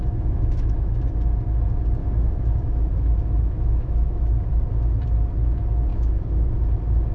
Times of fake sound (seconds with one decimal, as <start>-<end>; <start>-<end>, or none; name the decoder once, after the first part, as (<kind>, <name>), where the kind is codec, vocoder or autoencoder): 0.0-1.0 (autoencoder, DAC-VAE); 2.0-4.5; 5.9-6.5